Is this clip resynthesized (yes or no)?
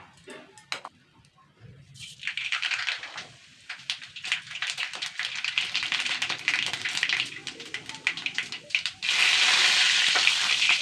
no